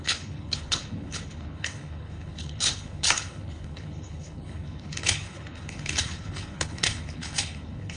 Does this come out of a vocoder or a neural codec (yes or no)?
yes